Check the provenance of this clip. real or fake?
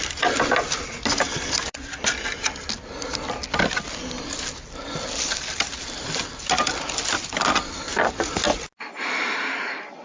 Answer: real